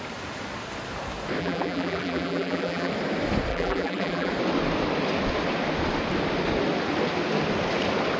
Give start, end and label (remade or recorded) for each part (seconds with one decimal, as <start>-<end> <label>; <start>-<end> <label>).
0.0-1.4 recorded; 1.4-2.9 remade; 2.9-3.5 recorded; 3.5-4.3 remade; 4.3-8.2 recorded